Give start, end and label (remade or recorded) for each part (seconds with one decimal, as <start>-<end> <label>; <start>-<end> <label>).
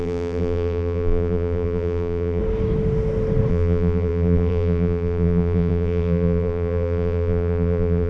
0.0-2.4 remade; 2.4-3.5 recorded; 3.5-8.1 remade